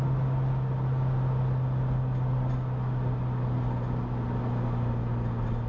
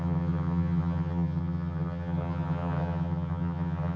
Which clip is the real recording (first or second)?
first